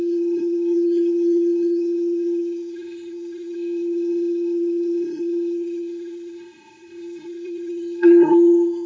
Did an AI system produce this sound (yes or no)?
yes